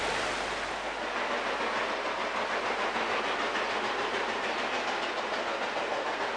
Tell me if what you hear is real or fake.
real